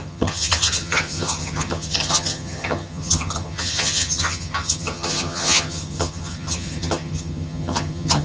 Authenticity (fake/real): fake